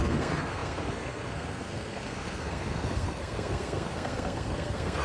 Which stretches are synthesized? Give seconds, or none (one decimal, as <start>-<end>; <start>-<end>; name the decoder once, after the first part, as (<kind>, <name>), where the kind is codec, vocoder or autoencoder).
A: 0.0-5.0 (codec, SNAC)